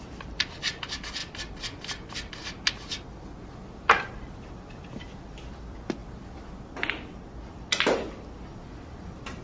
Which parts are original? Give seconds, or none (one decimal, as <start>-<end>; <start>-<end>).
0.0-1.2; 2.3-6.0; 6.6-9.4